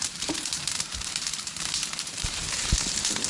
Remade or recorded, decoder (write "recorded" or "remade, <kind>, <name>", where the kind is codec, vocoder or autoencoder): remade, vocoder, BigVGAN v2